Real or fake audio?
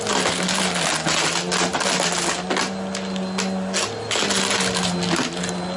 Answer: real